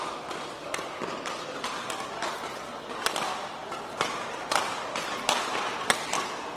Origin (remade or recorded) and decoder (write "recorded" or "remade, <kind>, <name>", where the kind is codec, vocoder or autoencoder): recorded